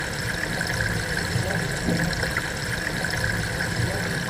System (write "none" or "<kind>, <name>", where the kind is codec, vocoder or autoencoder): none